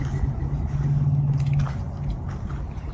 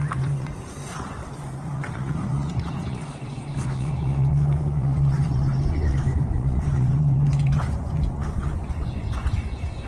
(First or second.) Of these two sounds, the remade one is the second